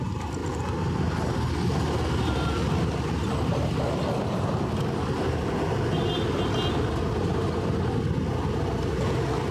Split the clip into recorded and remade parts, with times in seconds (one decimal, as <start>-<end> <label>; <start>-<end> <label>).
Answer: 0.0-9.5 recorded